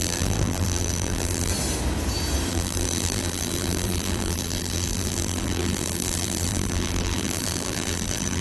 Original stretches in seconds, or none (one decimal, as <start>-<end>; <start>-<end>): 1.5-2.5